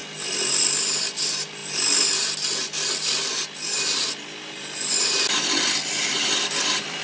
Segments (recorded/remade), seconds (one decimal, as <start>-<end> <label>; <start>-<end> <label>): 0.0-7.0 recorded